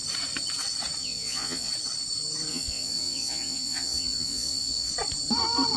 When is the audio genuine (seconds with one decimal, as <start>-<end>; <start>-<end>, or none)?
0.0-1.0; 1.7-2.5; 4.9-5.8